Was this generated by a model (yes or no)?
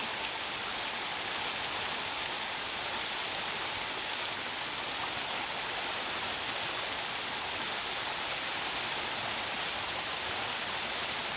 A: no